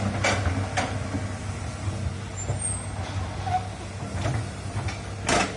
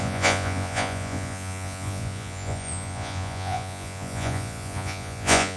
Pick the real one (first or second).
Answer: first